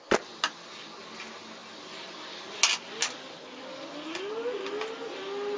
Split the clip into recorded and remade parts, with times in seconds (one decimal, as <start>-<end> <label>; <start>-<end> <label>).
0.0-5.6 recorded